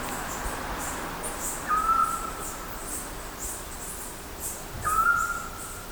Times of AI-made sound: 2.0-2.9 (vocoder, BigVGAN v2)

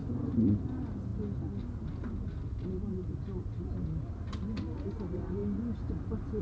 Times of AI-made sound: 0.0-0.5 (vocoder, BigVGAN v2)

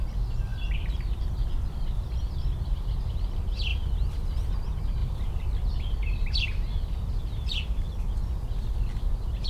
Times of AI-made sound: 0.5-1.2 (vocoder, BigVGAN v2); 5.0-5.7

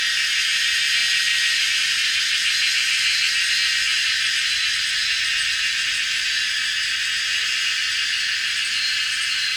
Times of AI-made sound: none

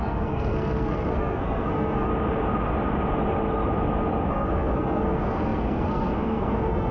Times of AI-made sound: 0.0-2.1 (codec, SNAC); 4.3-6.9